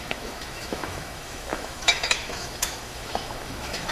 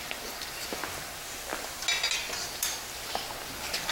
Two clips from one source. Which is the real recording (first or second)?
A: second